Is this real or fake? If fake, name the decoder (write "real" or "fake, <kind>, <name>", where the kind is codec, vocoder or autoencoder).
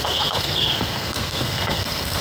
fake, codec, SNAC